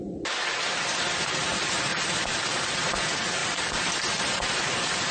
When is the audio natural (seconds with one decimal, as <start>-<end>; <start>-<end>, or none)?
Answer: 0.0-1.9; 2.6-3.4; 4.0-5.1